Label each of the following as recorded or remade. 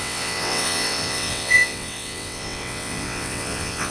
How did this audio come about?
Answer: remade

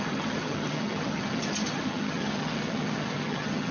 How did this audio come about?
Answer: remade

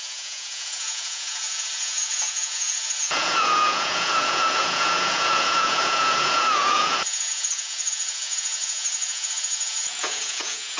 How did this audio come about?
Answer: remade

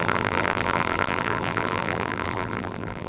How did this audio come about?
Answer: remade